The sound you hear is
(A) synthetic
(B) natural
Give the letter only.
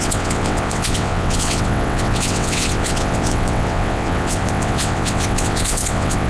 A